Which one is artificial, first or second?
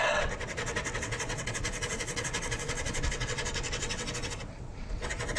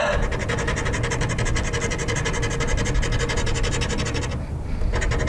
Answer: first